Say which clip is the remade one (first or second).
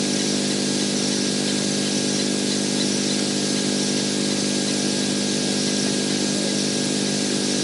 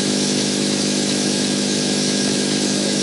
second